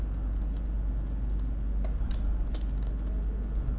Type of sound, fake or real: real